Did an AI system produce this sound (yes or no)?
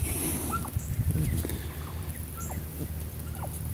no